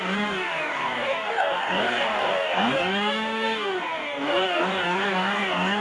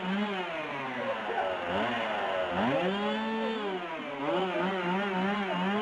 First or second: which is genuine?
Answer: second